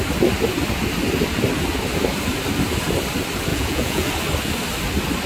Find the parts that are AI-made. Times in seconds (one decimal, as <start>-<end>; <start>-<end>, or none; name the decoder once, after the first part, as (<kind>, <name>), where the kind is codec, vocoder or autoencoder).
3.5-4.1 (vocoder, Vocos)